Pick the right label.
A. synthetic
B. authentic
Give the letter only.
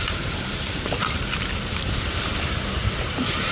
A